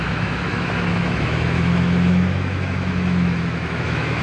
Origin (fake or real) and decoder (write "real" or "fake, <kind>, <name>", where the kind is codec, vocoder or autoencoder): fake, autoencoder, DAC-VAE